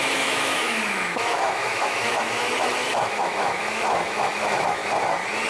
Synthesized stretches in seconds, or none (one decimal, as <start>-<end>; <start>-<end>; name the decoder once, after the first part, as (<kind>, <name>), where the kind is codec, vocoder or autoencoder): 0.0-4.8 (autoencoder, DAC-VAE)